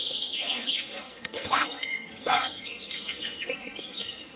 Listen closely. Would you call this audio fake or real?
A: fake